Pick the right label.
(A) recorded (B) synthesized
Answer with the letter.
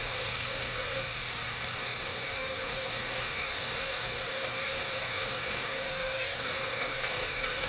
B